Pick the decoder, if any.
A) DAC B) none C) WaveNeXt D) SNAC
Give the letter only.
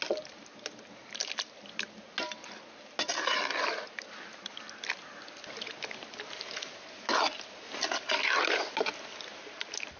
B